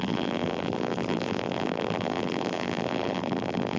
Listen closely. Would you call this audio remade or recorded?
remade